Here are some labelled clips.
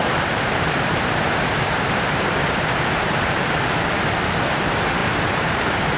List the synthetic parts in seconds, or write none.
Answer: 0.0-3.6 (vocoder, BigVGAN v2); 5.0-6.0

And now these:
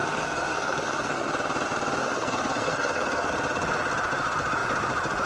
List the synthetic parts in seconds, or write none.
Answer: 0.0-1.3 (codec, SNAC); 2.0-3.3

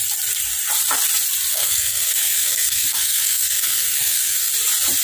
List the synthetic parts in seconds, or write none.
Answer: 1.5-4.5 (codec, SNAC)